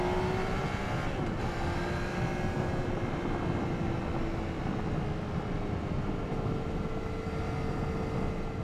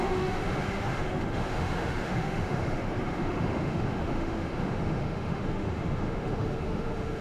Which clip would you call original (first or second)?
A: first